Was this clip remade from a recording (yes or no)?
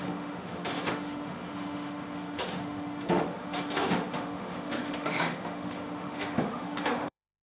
yes